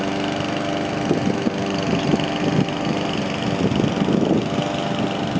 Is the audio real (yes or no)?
yes